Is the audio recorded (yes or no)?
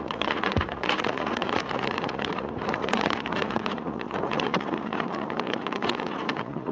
no